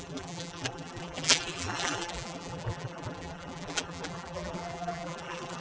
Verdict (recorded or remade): remade